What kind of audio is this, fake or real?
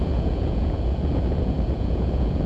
fake